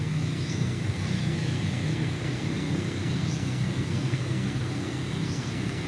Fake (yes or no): yes